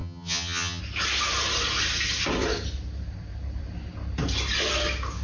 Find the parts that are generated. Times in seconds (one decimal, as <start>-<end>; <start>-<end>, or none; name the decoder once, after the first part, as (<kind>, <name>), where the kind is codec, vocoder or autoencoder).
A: 0.0-0.8 (vocoder, HiFi-GAN)